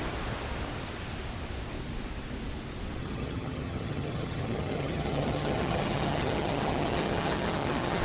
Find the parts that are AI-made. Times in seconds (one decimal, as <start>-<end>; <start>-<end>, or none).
3.0-8.0